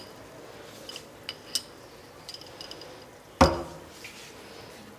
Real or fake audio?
real